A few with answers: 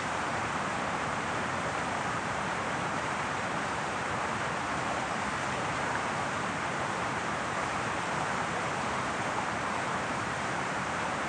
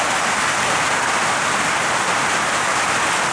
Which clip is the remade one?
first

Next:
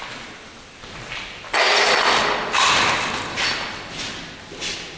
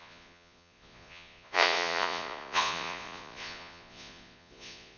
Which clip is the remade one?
second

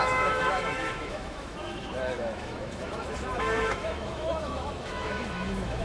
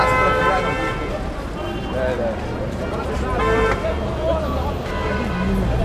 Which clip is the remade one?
first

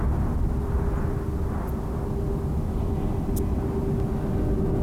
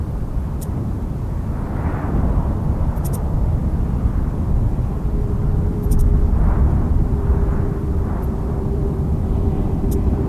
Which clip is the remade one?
second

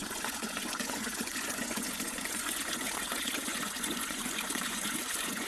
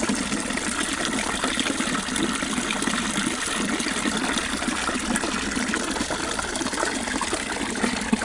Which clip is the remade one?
first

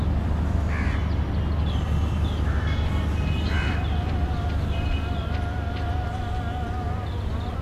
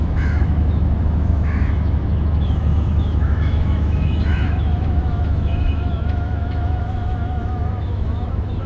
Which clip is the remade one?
second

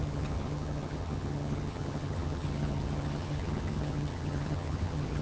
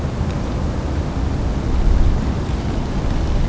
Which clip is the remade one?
first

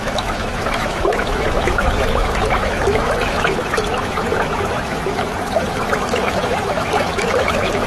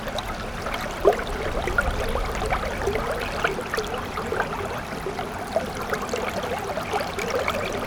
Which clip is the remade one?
first